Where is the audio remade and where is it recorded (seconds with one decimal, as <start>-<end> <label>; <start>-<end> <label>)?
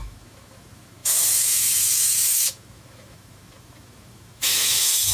0.0-5.1 remade